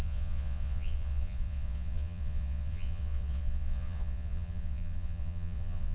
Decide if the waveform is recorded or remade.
remade